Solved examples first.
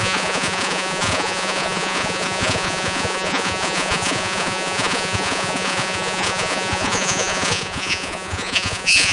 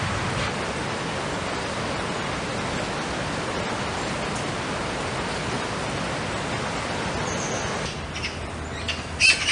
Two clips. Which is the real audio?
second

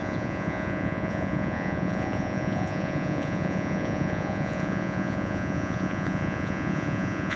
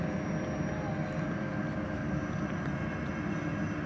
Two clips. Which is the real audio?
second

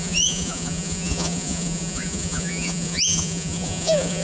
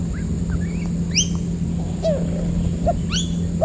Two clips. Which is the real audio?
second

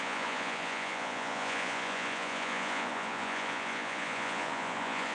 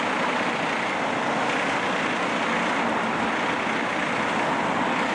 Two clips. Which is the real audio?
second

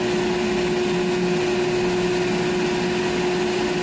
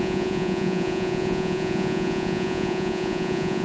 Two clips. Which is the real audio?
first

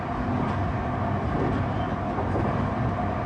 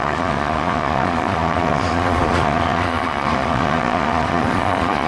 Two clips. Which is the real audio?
first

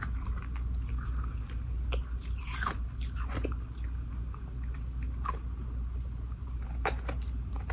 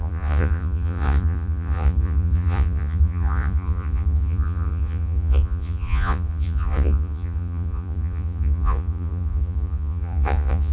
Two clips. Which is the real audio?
first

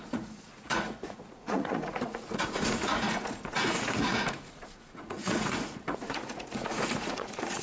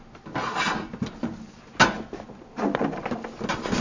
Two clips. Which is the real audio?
second